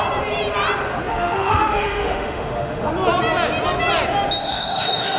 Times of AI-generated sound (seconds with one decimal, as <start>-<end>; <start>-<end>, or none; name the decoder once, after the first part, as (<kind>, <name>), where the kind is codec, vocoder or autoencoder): 1.1-2.9 (autoencoder, DAC-VAE); 4.4-5.2